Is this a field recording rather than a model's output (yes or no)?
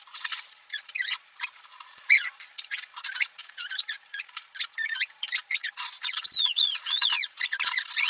no